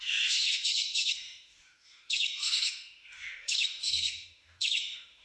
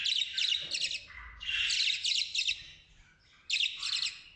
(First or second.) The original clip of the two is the second